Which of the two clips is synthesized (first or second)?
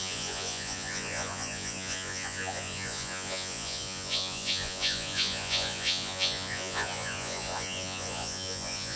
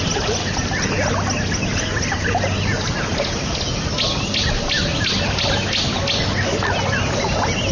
first